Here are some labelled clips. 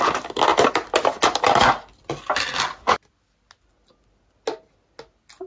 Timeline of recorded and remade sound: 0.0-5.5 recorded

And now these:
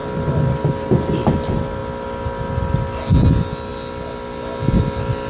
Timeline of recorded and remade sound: 0.0-5.3 recorded

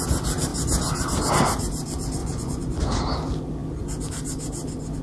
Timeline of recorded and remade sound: 0.0-2.2 recorded; 2.2-2.8 remade; 2.8-5.0 recorded

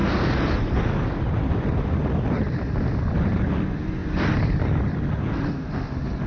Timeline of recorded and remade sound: 0.0-1.5 remade; 1.5-4.0 recorded; 4.0-4.6 remade; 4.6-6.3 recorded

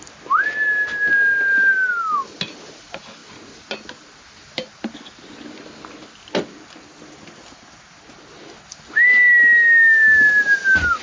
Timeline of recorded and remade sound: 0.0-11.0 recorded

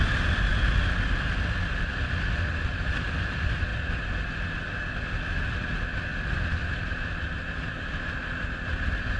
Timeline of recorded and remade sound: 0.0-9.2 recorded